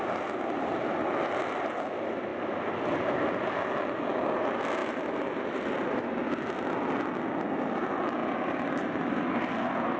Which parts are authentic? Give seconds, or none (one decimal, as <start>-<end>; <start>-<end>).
0.0-4.8; 5.9-8.2; 9.5-10.0